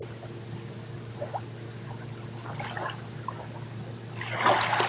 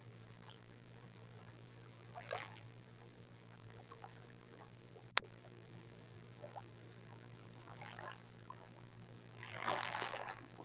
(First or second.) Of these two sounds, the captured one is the first